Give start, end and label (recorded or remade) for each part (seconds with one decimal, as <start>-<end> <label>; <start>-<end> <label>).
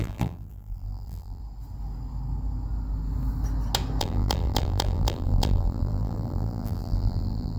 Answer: 0.0-1.4 remade; 1.4-4.0 recorded; 4.0-7.6 remade